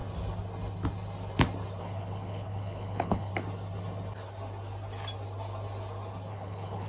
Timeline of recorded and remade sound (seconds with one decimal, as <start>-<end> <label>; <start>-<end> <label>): 0.0-1.8 recorded; 1.8-3.3 remade; 3.3-6.3 recorded; 6.3-6.9 remade